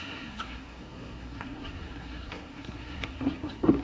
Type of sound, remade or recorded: remade